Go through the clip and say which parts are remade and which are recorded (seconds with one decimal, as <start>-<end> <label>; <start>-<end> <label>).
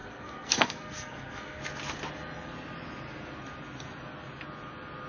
0.0-1.6 remade; 1.6-5.1 recorded